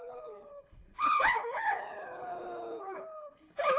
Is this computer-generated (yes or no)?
yes